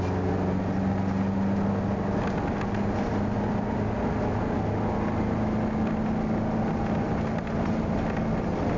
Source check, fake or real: real